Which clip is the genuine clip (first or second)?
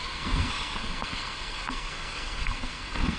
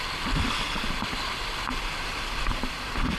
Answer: second